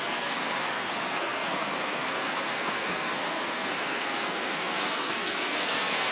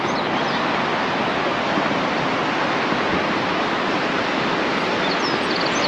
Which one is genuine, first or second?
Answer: second